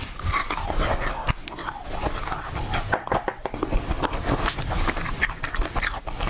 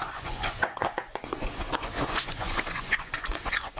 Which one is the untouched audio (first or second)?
first